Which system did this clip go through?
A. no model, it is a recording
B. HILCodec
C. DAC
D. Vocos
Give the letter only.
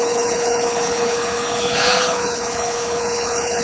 B